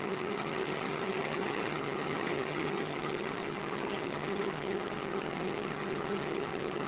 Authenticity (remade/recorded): remade